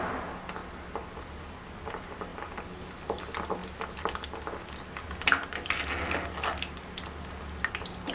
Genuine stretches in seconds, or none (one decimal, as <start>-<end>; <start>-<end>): 0.0-8.1